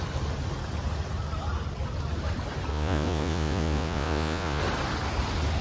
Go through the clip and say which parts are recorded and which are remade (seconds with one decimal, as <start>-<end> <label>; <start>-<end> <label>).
0.0-2.7 recorded; 2.7-4.6 remade; 4.6-5.6 recorded

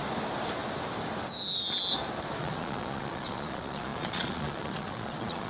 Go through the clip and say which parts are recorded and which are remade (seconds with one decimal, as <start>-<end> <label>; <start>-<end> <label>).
0.0-2.4 recorded; 2.4-5.5 remade

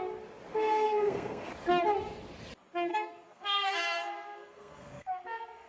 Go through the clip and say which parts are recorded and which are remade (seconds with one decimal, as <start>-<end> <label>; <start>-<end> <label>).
0.0-0.5 recorded; 0.5-1.5 remade; 1.5-2.9 recorded; 2.9-5.7 remade

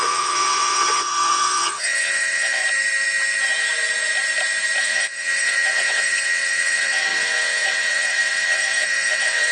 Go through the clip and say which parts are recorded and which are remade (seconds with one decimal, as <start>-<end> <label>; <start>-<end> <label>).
0.0-2.6 remade; 2.6-4.8 recorded; 4.8-9.5 remade

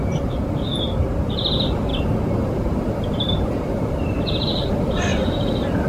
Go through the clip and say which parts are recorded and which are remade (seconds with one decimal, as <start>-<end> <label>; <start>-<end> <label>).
0.0-0.7 remade; 0.7-1.5 recorded; 1.5-1.9 remade; 1.9-2.9 recorded; 2.9-5.1 remade; 5.1-5.9 recorded

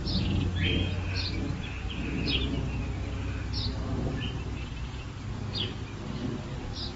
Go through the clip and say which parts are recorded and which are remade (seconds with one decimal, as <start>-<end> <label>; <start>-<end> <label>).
0.0-7.0 remade

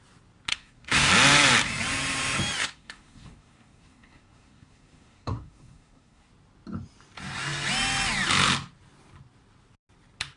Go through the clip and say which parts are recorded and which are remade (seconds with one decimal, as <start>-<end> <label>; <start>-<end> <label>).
0.0-0.5 recorded; 0.5-1.1 remade; 1.1-2.6 recorded; 2.6-6.3 remade; 6.3-10.4 recorded